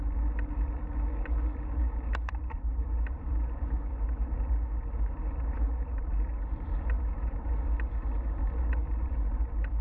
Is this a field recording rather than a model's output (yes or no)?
no